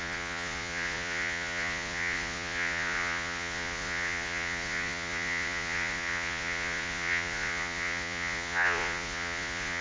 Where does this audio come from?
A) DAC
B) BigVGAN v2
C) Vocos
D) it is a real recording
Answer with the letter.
C